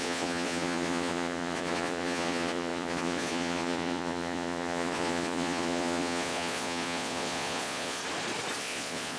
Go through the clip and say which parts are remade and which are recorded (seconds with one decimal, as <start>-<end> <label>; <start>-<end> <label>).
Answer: 0.0-8.0 remade; 8.0-8.6 recorded; 8.6-9.2 remade